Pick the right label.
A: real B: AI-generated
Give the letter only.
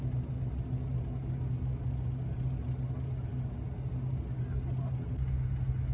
A